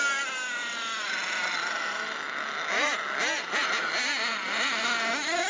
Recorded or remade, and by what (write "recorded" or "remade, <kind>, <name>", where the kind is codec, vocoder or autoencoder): recorded